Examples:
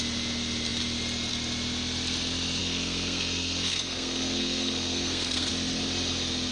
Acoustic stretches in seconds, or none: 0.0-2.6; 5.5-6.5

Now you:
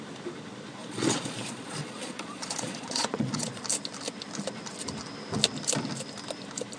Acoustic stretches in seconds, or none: 0.0-0.8; 3.6-6.8

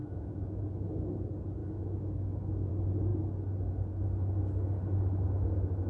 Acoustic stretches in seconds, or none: 0.6-1.6; 2.7-5.9

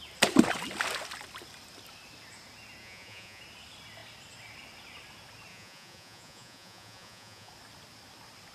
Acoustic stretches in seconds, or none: 0.0-2.8; 3.4-5.5; 7.5-8.5